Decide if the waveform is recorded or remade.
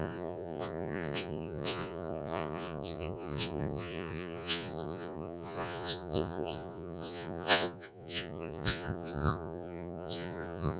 remade